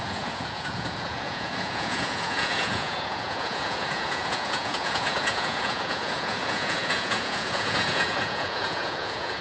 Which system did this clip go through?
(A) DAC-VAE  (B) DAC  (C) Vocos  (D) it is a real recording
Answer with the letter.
C